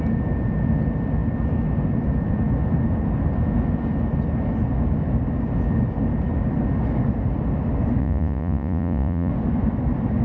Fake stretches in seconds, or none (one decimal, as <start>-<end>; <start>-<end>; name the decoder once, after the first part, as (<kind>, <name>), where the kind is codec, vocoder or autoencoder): 8.0-9.3 (vocoder, Vocos)